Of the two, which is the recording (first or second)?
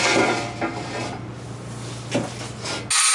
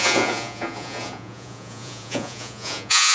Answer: first